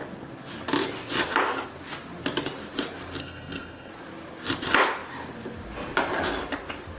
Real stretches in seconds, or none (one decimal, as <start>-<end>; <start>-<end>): 0.0-3.2; 3.9-7.0